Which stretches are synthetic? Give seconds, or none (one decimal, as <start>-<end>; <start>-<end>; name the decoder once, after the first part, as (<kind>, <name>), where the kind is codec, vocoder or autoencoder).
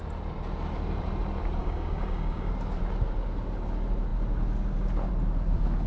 1.6-2.5 (codec, DAC)